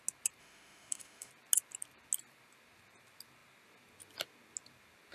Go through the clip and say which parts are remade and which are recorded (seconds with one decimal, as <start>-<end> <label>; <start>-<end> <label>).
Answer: 0.0-0.4 recorded; 0.4-1.3 remade; 1.3-5.1 recorded